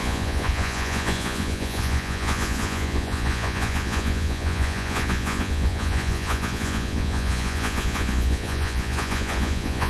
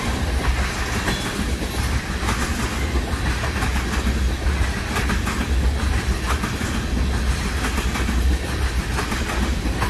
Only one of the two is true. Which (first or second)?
second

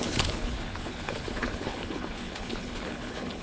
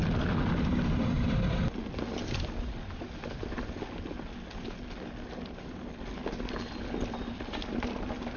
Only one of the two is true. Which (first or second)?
second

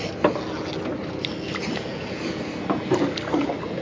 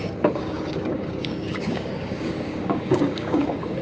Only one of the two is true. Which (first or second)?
first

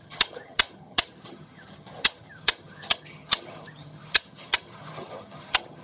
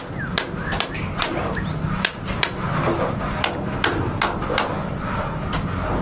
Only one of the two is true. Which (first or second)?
second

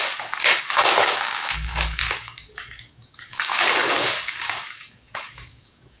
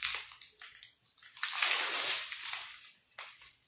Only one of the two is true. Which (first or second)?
second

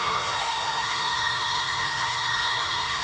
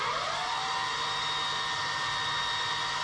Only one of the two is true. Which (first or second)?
second